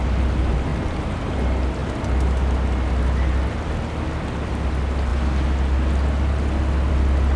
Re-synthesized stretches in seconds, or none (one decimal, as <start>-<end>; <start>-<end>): none